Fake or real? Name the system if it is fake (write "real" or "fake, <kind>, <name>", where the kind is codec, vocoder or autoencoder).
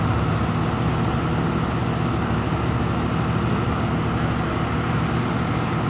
real